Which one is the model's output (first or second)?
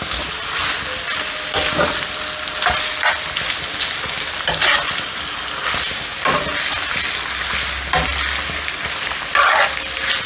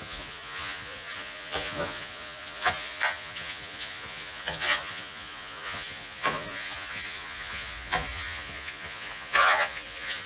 second